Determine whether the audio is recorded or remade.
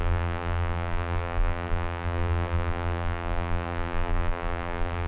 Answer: remade